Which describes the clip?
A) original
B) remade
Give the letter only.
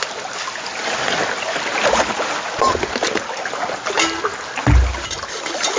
A